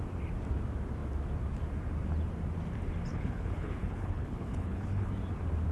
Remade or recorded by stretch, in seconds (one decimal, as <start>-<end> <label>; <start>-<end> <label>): 0.0-3.1 recorded; 3.1-5.1 remade; 5.1-5.7 recorded